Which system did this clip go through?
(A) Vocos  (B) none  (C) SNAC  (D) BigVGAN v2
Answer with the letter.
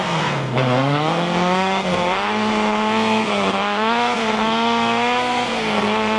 C